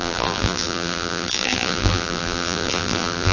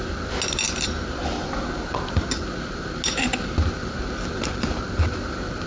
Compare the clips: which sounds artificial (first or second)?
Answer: first